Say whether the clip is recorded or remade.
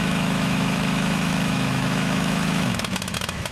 remade